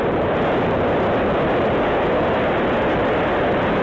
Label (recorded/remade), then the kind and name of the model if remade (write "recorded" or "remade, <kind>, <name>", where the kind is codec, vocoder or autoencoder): recorded